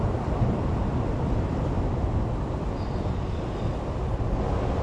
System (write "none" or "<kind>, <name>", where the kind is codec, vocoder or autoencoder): none